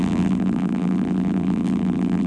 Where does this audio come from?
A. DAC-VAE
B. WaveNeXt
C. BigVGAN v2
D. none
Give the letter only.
C